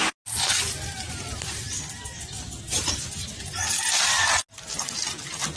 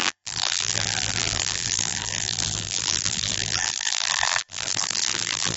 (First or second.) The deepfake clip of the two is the second